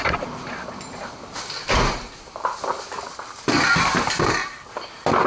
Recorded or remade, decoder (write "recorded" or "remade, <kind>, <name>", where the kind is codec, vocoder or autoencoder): recorded